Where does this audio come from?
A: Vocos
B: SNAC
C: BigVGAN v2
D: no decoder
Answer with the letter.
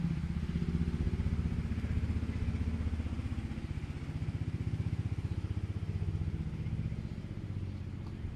D